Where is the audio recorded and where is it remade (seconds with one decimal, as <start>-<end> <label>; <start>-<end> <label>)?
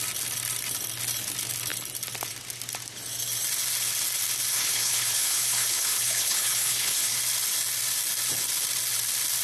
0.0-4.5 recorded; 4.5-7.2 remade; 7.2-9.4 recorded